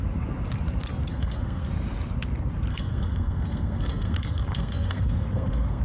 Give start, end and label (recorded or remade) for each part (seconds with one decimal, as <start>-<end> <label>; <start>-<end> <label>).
0.0-1.1 recorded; 1.1-1.7 remade; 1.7-2.7 recorded; 2.7-5.8 remade